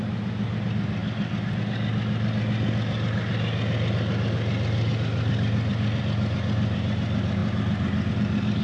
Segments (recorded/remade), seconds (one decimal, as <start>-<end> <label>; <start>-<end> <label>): 0.0-8.6 recorded